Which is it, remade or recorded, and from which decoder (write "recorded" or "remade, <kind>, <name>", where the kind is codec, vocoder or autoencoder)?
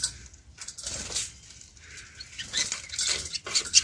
recorded